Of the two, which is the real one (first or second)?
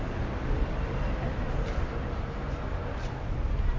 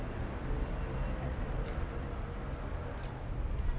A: second